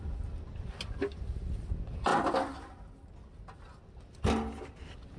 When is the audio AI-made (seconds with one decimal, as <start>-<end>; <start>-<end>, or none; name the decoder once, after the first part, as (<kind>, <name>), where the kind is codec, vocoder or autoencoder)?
none